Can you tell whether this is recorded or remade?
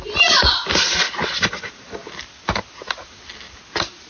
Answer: recorded